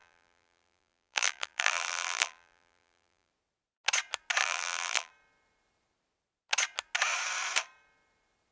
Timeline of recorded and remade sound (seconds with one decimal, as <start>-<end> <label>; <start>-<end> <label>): 0.0-3.3 remade; 3.3-4.4 recorded; 4.4-5.1 remade; 5.1-8.5 recorded